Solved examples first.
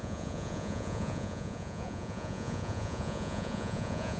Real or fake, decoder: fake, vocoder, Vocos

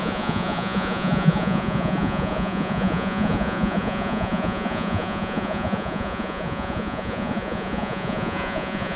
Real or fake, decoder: fake, vocoder, Vocos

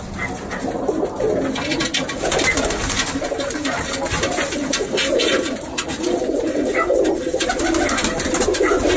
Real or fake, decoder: real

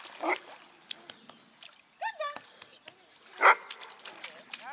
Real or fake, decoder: real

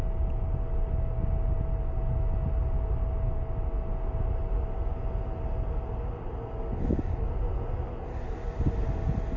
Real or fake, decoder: real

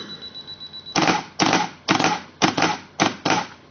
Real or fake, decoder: real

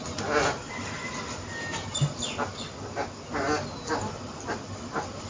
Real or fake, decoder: real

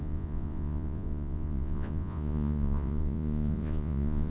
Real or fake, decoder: fake, vocoder, Vocos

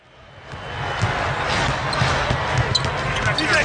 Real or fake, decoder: real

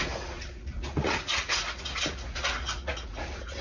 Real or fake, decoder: fake, vocoder, Vocos